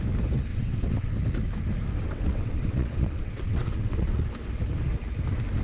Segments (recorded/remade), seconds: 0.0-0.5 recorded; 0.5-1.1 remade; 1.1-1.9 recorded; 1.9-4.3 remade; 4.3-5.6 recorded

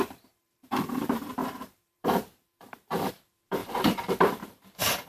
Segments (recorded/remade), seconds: 0.0-3.6 remade; 3.6-4.2 recorded; 4.2-5.1 remade

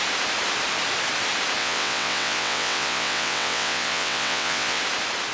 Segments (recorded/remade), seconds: 0.0-1.6 recorded; 1.6-4.8 remade; 4.8-5.3 recorded

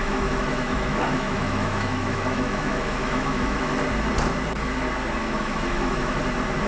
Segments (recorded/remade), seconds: 0.0-3.7 remade; 3.7-5.2 recorded; 5.2-6.2 remade; 6.2-6.7 recorded

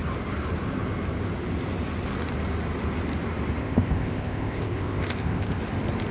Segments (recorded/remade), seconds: 0.0-3.6 recorded; 3.6-5.6 remade; 5.6-6.1 recorded

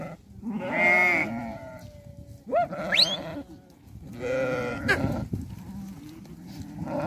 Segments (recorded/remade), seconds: 0.0-7.1 recorded

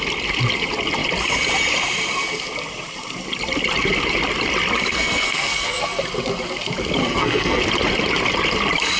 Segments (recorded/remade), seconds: 0.0-4.9 recorded; 4.9-6.0 remade; 6.0-7.0 recorded; 7.0-7.6 remade; 7.6-9.0 recorded